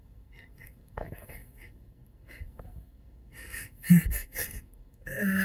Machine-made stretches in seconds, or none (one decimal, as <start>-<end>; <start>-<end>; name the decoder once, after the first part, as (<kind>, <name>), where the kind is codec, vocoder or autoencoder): 0.0-5.4 (codec, SNAC)